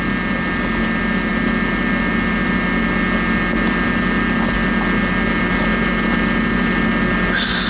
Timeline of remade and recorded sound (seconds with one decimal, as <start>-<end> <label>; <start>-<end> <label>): 0.0-7.7 recorded